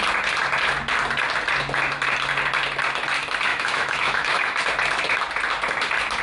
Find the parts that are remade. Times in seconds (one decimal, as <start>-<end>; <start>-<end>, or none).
3.5-4.6

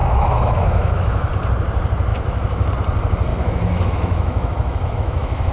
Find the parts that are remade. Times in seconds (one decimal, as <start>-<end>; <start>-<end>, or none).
0.0-1.3; 2.1-2.7; 3.3-5.5

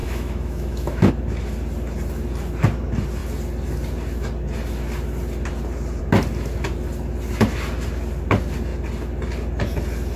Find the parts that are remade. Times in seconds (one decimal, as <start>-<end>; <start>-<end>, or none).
0.0-1.1

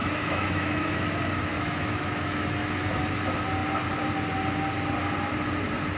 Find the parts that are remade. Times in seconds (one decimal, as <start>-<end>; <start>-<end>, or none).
0.0-1.1; 1.5-3.1

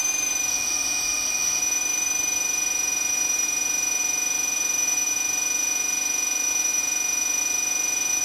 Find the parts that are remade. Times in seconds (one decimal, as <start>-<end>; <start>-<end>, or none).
0.5-1.6